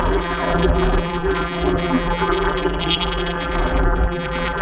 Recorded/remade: remade